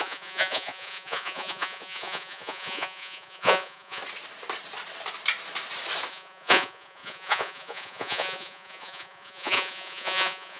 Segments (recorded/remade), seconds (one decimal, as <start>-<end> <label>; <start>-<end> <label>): 0.0-4.0 remade; 4.0-6.1 recorded; 6.1-10.6 remade